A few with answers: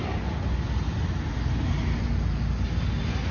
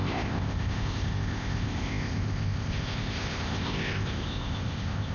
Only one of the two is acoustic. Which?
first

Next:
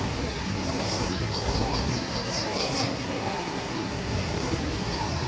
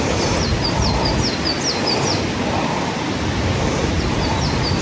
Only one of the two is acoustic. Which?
second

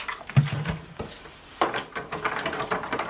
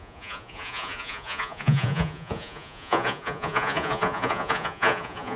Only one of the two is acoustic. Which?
first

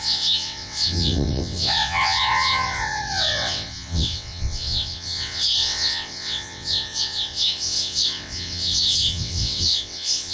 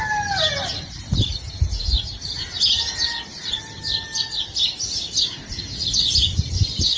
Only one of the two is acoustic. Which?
second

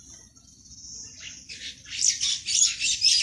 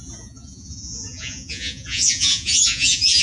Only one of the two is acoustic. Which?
first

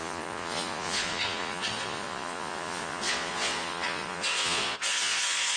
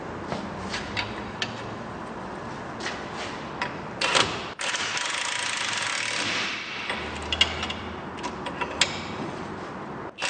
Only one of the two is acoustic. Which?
second